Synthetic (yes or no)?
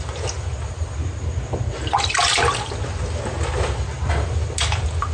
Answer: no